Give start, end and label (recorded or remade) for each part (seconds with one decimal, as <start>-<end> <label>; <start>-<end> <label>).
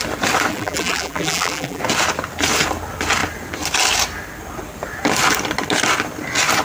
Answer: 0.0-0.5 recorded; 0.5-1.8 remade; 1.8-6.6 recorded